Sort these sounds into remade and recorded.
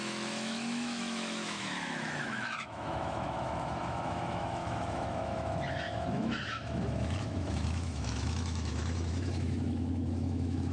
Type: remade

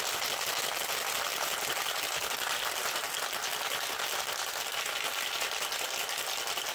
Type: recorded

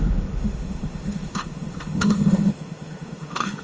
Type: remade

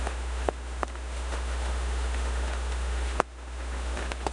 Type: remade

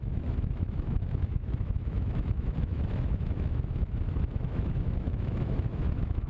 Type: remade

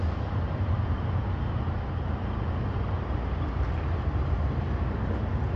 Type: recorded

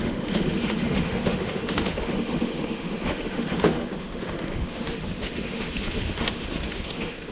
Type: remade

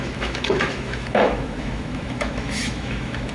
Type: remade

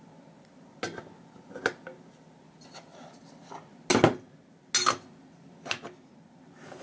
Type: recorded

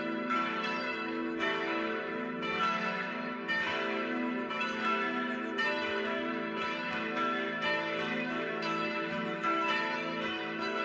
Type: remade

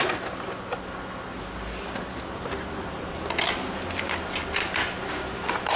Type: recorded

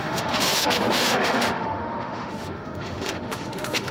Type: remade